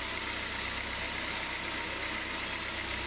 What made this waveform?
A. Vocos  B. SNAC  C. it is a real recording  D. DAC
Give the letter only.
C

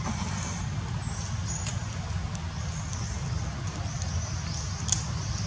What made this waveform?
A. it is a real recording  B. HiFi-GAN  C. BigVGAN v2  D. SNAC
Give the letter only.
A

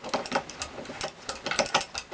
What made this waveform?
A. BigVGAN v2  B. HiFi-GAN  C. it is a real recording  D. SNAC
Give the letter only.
C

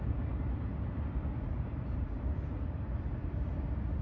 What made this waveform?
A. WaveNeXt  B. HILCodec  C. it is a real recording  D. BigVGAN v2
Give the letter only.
D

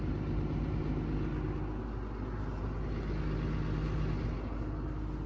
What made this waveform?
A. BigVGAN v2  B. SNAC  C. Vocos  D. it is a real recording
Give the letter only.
D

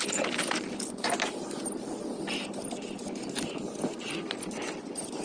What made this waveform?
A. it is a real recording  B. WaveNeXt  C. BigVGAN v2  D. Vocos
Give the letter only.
A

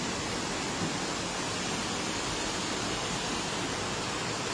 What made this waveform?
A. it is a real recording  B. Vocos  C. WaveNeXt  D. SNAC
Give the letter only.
A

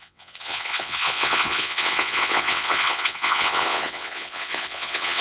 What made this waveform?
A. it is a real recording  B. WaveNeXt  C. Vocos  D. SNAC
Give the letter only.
B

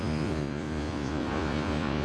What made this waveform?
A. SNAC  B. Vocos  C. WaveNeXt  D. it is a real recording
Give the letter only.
B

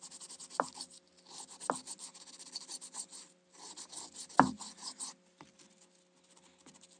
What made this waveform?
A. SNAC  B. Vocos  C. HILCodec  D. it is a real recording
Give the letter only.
D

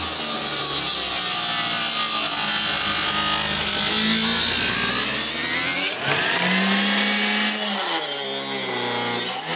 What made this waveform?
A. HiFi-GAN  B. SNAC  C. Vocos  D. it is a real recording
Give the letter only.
D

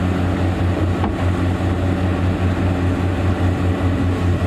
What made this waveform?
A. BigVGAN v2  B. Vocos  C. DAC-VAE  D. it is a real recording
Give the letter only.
D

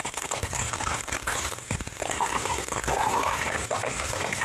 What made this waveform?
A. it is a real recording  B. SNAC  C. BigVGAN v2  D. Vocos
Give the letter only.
B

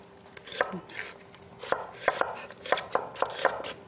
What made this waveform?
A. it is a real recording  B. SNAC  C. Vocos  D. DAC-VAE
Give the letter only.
A